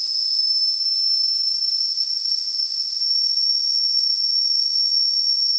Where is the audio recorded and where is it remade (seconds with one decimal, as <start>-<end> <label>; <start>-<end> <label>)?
0.0-0.4 remade; 0.4-1.8 recorded; 1.8-5.6 remade